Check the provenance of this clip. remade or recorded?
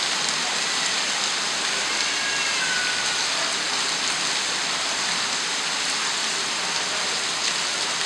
recorded